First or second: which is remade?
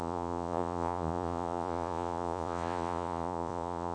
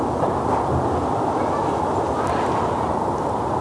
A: first